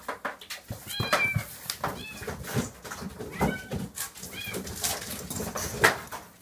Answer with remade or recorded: recorded